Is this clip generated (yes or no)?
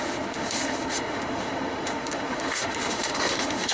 yes